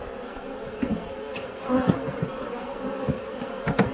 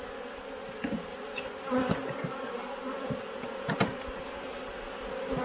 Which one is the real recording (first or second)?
second